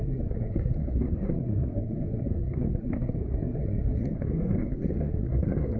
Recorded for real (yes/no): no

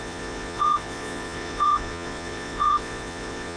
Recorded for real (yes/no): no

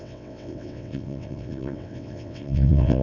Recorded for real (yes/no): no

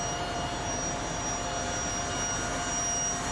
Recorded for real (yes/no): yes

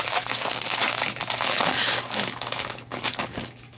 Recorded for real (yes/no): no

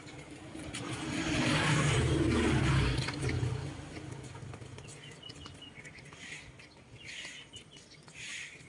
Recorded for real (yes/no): yes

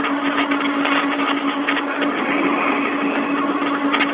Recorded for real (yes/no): yes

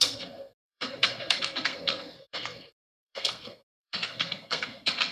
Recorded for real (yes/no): no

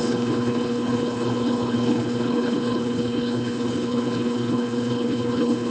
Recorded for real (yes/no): no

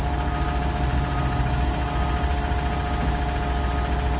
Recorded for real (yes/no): yes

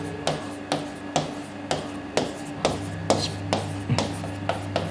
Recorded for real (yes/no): yes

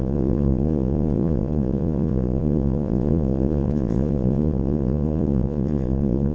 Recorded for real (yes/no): no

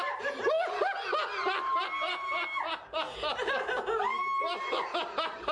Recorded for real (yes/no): yes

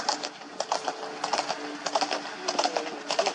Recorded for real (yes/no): yes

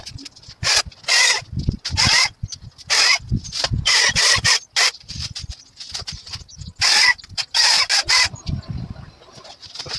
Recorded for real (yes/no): yes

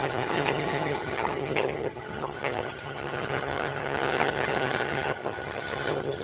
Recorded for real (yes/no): no